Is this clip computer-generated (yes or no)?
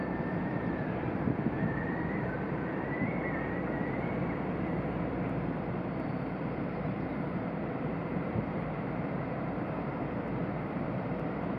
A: yes